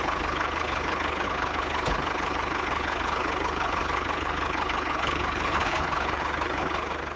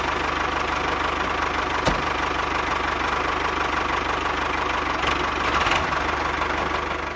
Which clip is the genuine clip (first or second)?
second